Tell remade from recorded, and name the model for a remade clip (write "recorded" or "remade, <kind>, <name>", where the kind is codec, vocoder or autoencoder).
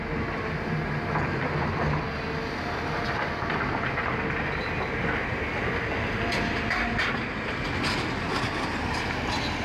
recorded